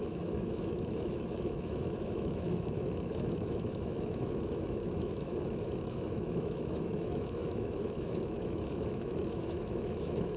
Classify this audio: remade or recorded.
remade